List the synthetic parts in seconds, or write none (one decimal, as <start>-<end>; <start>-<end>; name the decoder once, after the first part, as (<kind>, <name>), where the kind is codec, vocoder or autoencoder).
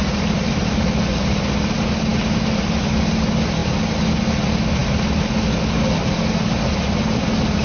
0.0-0.6 (vocoder, BigVGAN v2)